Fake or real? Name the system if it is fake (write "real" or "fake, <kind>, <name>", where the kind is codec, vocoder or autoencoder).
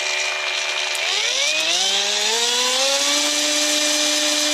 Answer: real